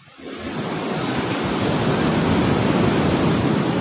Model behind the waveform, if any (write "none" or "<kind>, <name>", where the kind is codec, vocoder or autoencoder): none